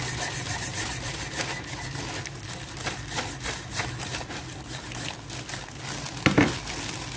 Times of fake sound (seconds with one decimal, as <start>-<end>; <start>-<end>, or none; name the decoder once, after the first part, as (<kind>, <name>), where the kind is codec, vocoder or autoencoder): none